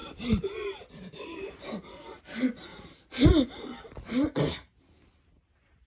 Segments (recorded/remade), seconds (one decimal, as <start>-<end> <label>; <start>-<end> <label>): 0.0-2.7 recorded; 2.7-5.1 remade; 5.1-5.9 recorded